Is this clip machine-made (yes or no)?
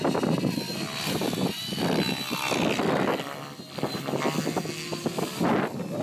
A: no